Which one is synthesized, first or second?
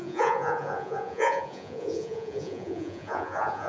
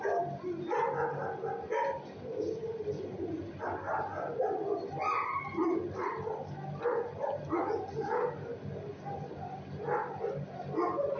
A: first